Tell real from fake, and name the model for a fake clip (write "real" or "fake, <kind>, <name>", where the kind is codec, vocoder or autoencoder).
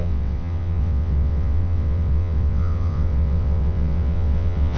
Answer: fake, vocoder, WaveNeXt